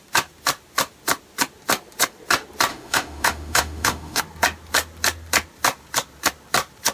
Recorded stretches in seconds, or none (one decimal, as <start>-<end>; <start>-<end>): 0.0-2.7; 4.2-6.9